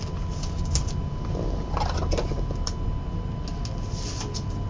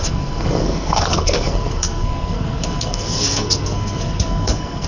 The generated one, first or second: second